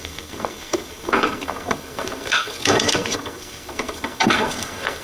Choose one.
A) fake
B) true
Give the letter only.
A